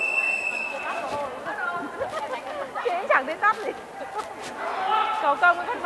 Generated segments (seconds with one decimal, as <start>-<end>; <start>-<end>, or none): none